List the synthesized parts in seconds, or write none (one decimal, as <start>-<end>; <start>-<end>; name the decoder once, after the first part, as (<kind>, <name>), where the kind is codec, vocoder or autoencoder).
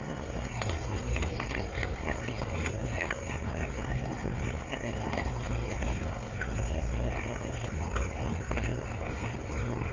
0.0-9.9 (codec, SNAC)